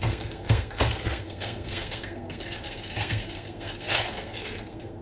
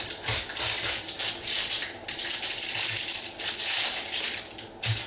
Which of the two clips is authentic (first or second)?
second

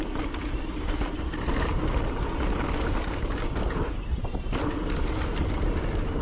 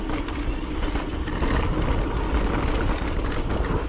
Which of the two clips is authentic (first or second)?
second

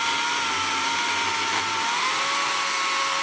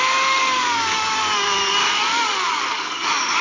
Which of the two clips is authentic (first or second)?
first